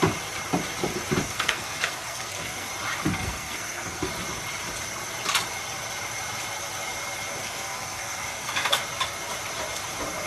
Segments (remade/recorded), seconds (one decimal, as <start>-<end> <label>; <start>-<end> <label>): 0.0-1.2 recorded; 1.2-2.7 remade; 2.7-3.1 recorded; 3.1-4.1 remade; 4.1-7.4 recorded; 7.4-8.8 remade; 8.8-10.3 recorded